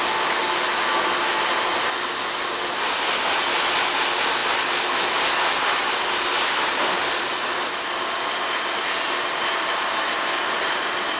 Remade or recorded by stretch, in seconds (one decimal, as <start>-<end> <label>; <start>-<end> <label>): 0.0-11.2 recorded